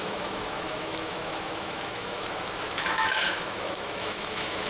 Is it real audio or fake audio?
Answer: fake